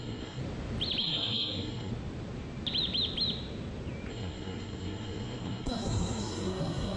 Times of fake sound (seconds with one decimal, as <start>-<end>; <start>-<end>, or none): 0.0-0.4; 1.0-1.9; 4.1-7.0